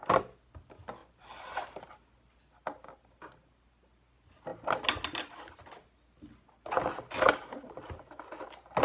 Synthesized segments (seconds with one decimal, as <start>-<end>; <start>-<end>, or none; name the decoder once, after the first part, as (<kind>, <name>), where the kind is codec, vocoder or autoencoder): none